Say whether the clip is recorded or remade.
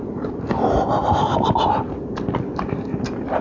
recorded